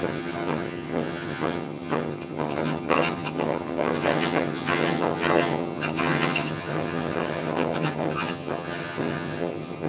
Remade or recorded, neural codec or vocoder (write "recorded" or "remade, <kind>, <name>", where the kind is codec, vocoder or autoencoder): remade, vocoder, HiFi-GAN